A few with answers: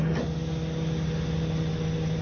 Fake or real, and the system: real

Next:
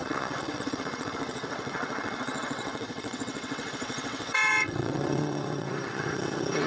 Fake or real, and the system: fake, vocoder, WaveNeXt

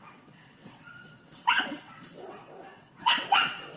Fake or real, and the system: fake, vocoder, WaveNeXt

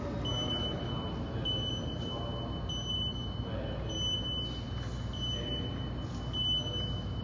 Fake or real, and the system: real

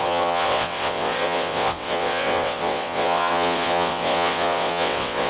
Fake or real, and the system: fake, vocoder, WaveNeXt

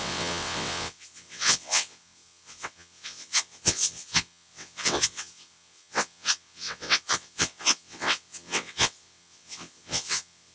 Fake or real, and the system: fake, vocoder, WaveNeXt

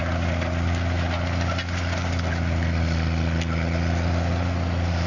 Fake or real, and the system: real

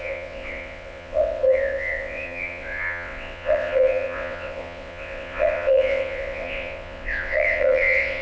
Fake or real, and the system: fake, vocoder, WaveNeXt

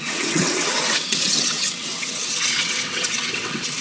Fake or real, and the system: fake, vocoder, WaveNeXt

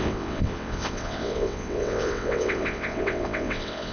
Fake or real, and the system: fake, vocoder, WaveNeXt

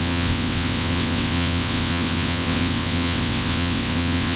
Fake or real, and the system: fake, vocoder, WaveNeXt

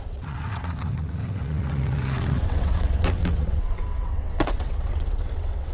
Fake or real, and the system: fake, vocoder, WaveNeXt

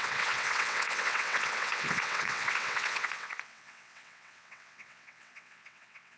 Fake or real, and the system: fake, vocoder, WaveNeXt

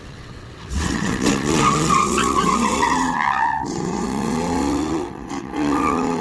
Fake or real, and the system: fake, vocoder, WaveNeXt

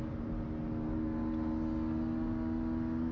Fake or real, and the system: real